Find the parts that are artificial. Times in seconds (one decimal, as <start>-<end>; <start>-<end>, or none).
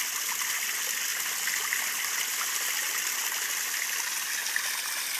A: none